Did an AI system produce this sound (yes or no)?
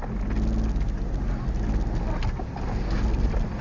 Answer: no